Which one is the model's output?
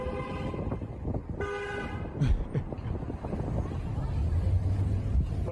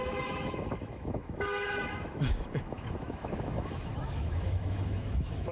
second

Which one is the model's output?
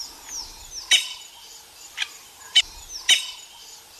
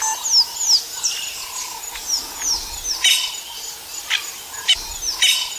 first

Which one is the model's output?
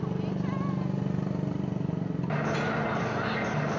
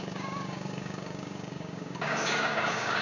second